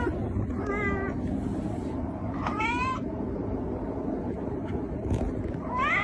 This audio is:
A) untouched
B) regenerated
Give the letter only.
A